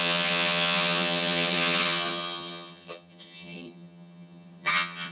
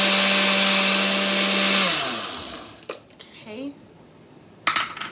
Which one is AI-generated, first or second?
first